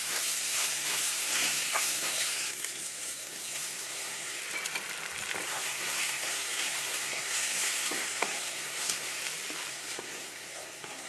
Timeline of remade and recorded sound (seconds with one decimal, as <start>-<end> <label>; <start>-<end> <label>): 0.0-4.4 remade; 4.4-5.5 recorded; 5.5-9.2 remade; 9.2-9.7 recorded; 9.7-11.1 remade